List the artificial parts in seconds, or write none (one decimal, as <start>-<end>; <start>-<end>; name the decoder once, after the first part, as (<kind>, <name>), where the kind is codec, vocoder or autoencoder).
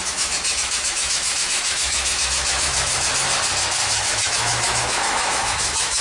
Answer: 0.0-3.1 (autoencoder, DAC-VAE); 3.8-6.0